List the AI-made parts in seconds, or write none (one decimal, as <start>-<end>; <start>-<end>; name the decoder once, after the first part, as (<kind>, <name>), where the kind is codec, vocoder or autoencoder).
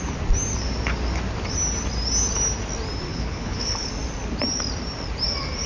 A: 3.1-3.9 (codec, HILCodec)